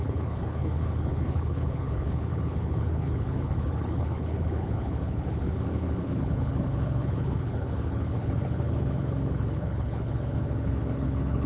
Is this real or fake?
fake